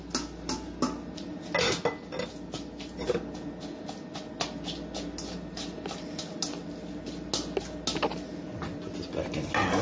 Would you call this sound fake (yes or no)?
no